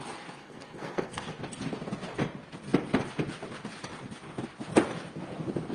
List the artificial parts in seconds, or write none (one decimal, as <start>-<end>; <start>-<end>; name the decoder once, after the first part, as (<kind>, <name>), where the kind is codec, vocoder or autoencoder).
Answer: 0.4-1.4 (codec, SNAC)